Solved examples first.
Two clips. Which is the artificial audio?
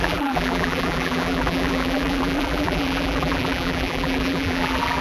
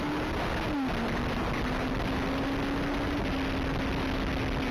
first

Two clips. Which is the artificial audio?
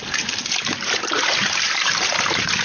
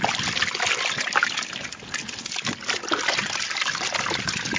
first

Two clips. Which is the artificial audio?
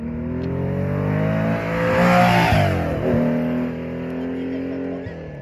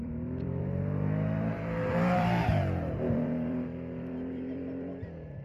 second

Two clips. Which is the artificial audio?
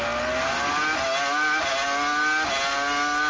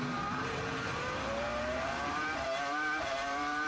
second